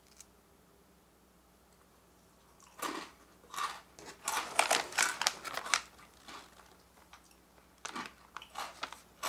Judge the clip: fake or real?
real